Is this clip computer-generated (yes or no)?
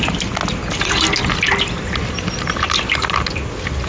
no